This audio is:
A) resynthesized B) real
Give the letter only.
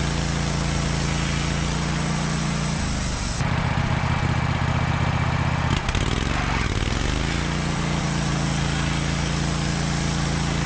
B